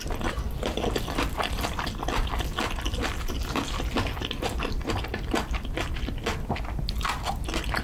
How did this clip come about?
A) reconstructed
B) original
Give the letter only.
B